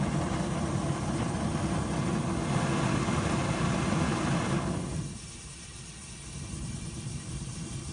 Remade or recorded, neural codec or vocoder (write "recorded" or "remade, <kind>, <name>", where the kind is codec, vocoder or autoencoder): recorded